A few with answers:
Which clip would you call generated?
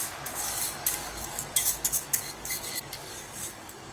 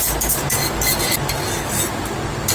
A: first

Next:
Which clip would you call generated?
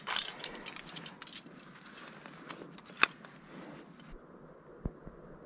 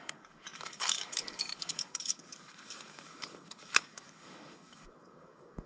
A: second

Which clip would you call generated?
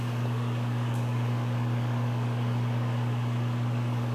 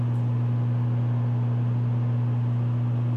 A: first